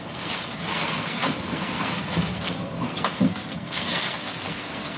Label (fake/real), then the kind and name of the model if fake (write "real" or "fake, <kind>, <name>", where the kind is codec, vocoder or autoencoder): fake, codec, SNAC